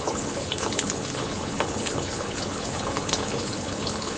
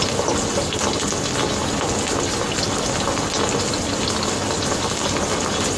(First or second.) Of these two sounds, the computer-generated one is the first